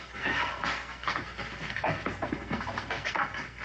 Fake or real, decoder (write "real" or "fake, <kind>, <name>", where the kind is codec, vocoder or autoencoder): fake, codec, SNAC